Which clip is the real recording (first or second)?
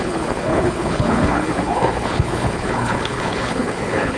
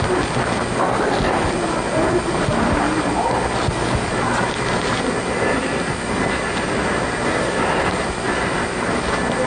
second